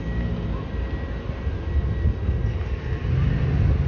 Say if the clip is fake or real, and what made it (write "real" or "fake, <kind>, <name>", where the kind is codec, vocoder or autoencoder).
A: real